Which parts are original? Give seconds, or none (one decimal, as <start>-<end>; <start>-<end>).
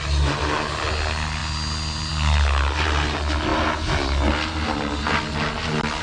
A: 0.0-6.0